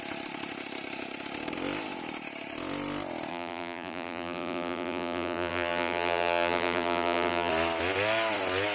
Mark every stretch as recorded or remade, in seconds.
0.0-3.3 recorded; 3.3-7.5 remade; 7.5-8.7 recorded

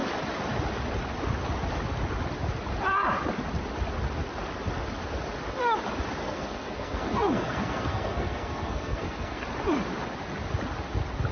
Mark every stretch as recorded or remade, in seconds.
0.0-6.2 recorded; 6.2-9.4 remade; 9.4-11.3 recorded

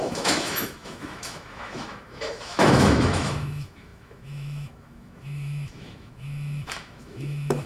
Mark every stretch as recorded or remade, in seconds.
0.0-7.7 remade

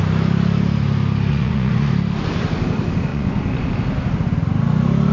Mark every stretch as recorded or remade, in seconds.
0.0-1.3 recorded; 1.3-1.9 remade; 1.9-3.1 recorded; 3.1-3.7 remade; 3.7-5.1 recorded

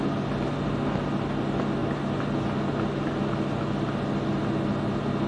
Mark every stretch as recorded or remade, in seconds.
0.0-5.3 recorded

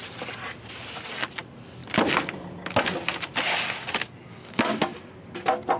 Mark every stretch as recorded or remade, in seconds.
0.0-4.3 recorded; 4.3-5.0 remade; 5.0-5.8 recorded